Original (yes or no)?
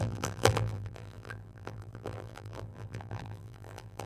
no